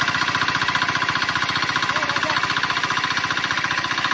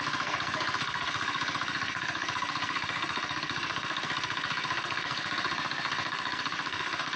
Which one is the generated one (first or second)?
second